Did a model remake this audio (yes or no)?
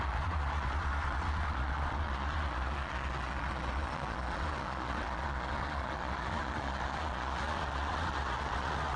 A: yes